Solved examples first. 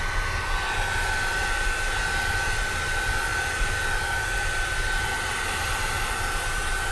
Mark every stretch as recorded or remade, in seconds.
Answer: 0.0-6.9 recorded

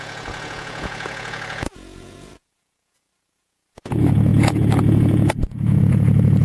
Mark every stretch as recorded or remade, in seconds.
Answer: 0.0-6.4 remade